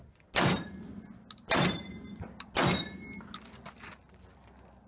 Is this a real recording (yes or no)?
yes